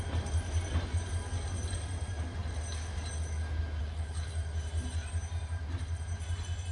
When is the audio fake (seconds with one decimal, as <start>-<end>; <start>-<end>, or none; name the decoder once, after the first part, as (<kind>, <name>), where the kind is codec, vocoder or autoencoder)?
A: 3.8-4.3 (codec, HILCodec)